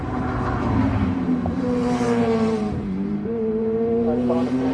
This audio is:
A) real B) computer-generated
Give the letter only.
B